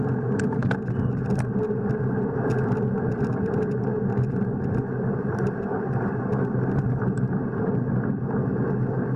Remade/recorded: recorded